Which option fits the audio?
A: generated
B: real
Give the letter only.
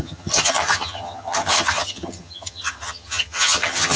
A